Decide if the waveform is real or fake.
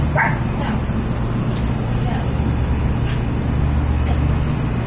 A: real